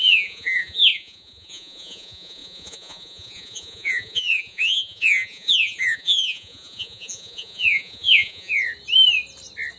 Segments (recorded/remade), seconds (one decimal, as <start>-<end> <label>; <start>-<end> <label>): 0.0-8.5 remade; 8.5-9.8 recorded